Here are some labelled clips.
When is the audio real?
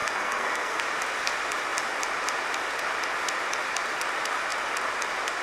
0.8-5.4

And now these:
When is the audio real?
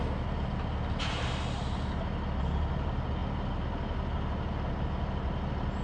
0.0-5.8